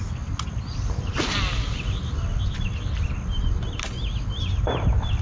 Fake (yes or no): no